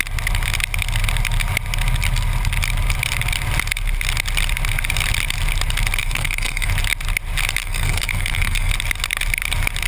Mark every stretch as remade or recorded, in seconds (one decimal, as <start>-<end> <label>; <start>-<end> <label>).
0.0-6.0 recorded; 6.0-6.7 remade; 6.7-7.6 recorded; 7.6-8.7 remade; 8.7-9.9 recorded